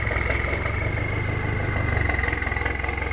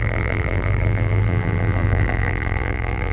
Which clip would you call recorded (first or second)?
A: first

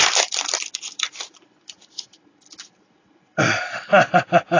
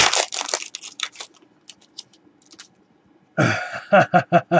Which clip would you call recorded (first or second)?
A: second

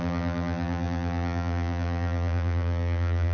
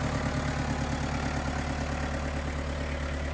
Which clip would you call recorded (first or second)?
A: second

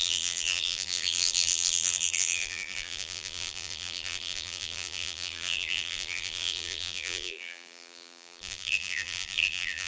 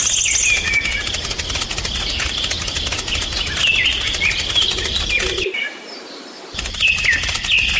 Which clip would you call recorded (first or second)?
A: second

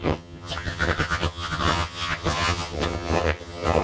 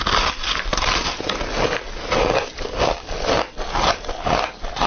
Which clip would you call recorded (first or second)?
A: second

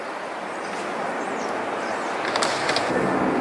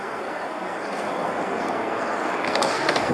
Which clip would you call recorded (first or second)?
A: first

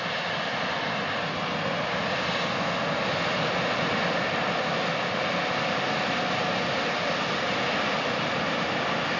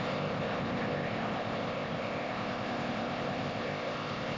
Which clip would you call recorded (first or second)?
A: first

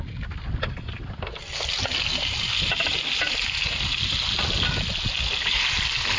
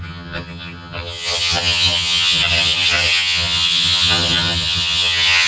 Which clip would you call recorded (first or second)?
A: first